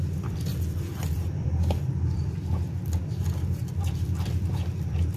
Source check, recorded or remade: remade